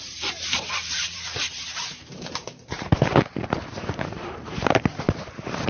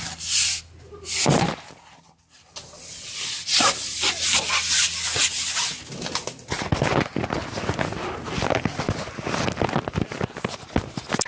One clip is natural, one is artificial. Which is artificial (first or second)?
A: first